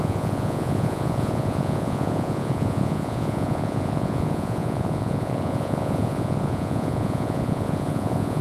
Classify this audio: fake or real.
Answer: fake